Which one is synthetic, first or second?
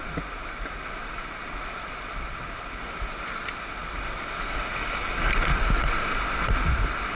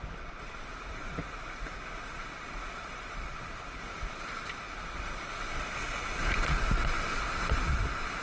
second